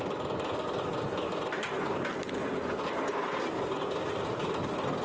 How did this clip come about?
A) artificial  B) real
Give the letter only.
B